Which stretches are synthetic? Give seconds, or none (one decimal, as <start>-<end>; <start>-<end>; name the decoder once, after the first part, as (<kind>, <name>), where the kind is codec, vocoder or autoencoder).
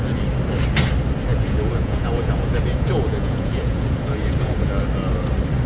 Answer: 1.3-4.7 (vocoder, Vocos)